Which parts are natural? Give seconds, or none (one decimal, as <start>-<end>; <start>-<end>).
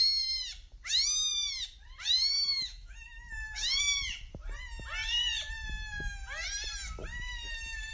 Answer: 0.0-2.3; 3.8-7.9